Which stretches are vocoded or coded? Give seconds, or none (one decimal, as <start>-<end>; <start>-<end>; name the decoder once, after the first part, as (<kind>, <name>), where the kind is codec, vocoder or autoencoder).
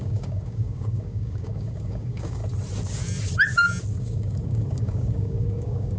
0.0-2.4 (codec, DAC); 4.0-6.0